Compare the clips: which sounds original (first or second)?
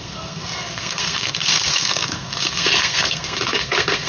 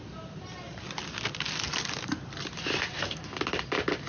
second